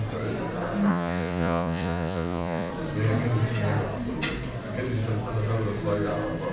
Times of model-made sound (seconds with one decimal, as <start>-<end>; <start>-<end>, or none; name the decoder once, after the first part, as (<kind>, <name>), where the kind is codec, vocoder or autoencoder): 0.9-2.7 (vocoder, Vocos)